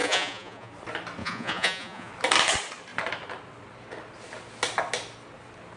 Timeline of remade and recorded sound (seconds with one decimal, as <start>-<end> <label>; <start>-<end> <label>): 0.0-0.7 remade; 0.7-1.2 recorded; 1.2-2.1 remade; 2.1-5.8 recorded